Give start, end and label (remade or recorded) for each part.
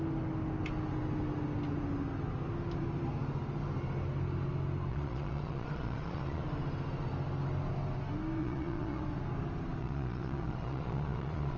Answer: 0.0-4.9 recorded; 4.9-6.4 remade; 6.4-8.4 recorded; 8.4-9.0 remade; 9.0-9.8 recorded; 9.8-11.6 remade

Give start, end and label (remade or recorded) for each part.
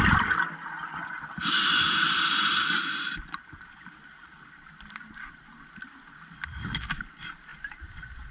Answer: 0.0-8.3 recorded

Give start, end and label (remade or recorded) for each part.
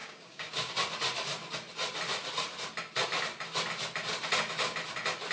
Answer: 0.0-0.7 remade; 0.7-5.3 recorded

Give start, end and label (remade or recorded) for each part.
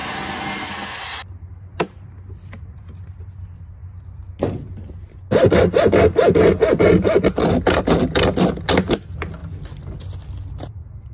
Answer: 0.0-11.1 recorded